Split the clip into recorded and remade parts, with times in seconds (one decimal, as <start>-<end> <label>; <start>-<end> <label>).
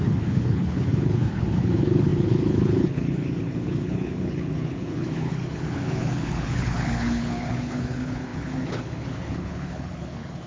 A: 0.0-10.5 remade